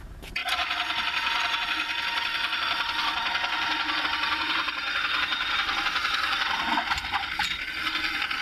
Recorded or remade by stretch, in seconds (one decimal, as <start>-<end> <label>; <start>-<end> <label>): 0.0-8.4 remade